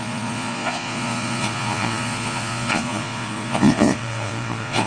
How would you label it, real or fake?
fake